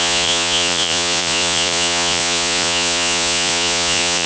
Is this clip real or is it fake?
fake